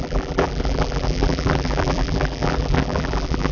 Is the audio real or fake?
fake